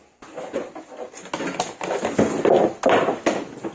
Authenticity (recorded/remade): recorded